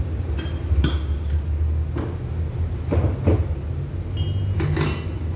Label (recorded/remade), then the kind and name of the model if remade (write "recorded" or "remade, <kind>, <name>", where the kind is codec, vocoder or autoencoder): recorded